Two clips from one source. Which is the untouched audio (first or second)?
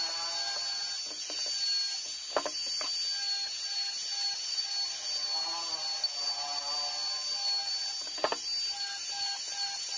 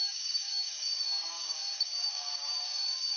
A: first